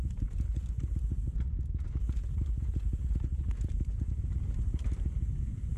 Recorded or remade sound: remade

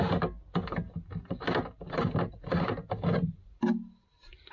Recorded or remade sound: recorded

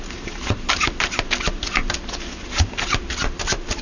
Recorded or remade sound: recorded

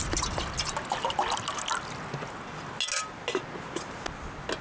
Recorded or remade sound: recorded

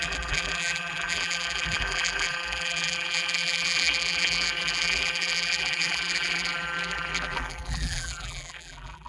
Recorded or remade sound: remade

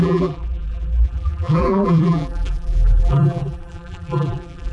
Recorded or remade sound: remade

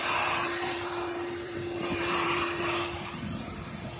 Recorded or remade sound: remade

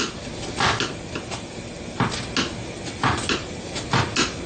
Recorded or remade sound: recorded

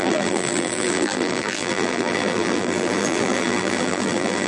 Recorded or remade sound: remade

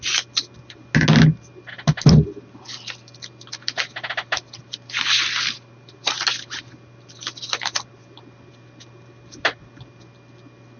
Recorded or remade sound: recorded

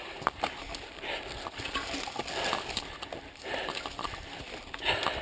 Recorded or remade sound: remade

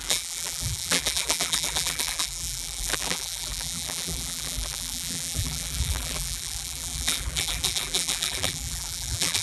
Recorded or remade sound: remade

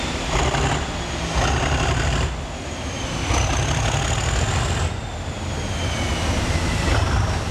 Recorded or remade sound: recorded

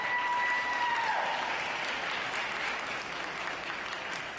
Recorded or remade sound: recorded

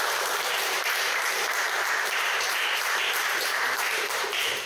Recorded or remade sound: remade